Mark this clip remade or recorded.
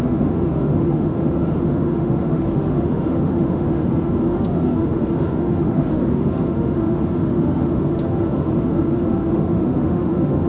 remade